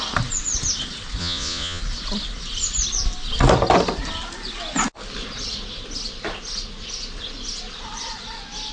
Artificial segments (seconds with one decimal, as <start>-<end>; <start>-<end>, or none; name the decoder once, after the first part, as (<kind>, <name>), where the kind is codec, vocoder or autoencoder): 1.2-1.8 (vocoder, Vocos)